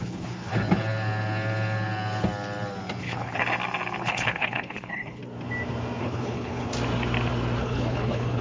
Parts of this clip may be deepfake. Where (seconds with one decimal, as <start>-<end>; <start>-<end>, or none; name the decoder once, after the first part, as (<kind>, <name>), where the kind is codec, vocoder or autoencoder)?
0.0-0.5 (codec, HILCodec); 3.0-3.4; 4.0-5.2; 6.0-6.7; 7.6-8.4